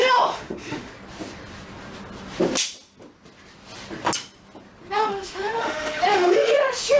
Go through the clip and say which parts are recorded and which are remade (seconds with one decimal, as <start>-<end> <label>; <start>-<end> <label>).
0.0-0.9 remade; 0.9-4.9 recorded; 4.9-7.0 remade